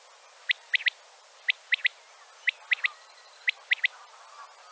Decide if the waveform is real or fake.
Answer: real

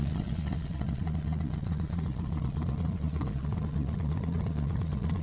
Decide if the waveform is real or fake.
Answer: fake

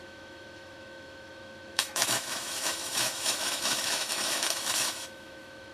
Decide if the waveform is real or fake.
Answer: fake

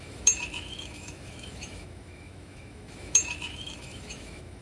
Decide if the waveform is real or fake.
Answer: fake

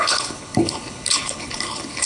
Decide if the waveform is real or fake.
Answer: fake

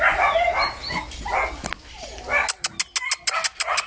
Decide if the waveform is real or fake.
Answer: real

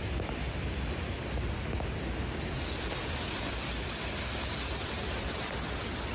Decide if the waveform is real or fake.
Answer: real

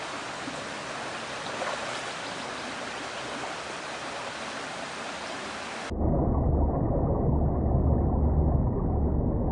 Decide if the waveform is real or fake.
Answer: real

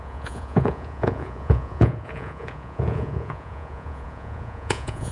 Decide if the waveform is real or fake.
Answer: fake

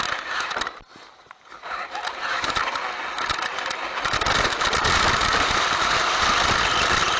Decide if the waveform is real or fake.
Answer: real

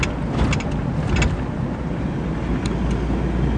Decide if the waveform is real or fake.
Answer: real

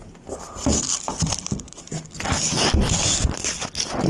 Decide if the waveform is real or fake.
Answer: real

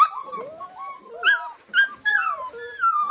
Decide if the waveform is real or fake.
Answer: real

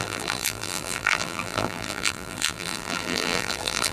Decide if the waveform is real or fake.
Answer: fake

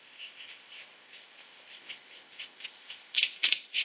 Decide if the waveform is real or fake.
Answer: fake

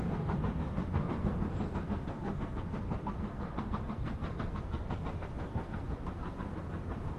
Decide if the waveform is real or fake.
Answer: fake